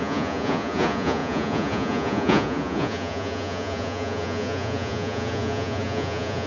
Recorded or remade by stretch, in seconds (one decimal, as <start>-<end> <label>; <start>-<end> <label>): 0.0-6.5 remade